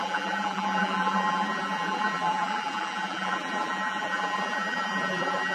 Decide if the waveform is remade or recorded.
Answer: remade